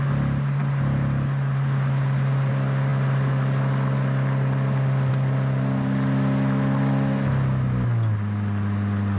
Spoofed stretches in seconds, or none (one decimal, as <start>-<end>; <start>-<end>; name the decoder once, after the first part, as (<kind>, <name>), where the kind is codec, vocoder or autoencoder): none